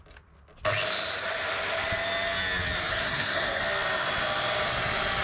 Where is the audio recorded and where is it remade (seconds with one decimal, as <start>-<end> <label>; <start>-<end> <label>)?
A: 0.0-2.9 recorded; 2.9-3.6 remade; 3.6-5.2 recorded